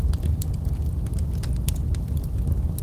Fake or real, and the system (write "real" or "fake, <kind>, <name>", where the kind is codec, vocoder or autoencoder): real